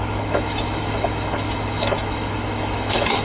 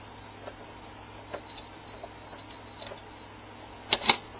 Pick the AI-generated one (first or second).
first